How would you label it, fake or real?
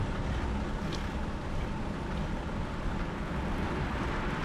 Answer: real